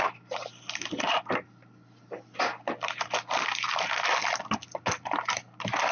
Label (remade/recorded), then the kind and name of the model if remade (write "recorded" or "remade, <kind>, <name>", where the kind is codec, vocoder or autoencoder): recorded